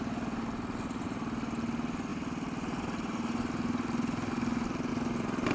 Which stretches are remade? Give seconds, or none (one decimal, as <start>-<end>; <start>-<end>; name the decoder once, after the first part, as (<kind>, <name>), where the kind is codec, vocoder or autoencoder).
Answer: none